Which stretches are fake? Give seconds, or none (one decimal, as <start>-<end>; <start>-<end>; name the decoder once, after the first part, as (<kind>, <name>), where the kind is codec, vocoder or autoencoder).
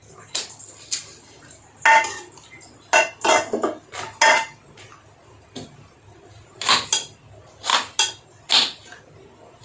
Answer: none